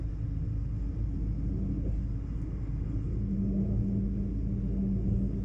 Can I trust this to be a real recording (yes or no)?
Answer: yes